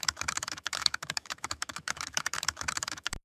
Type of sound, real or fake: fake